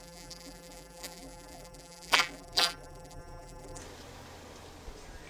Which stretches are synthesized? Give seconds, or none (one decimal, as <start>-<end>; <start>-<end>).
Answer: 0.0-3.8